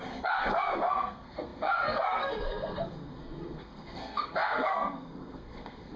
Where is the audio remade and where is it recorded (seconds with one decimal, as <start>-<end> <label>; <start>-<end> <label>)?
0.0-6.0 remade